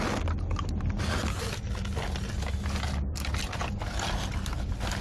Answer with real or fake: real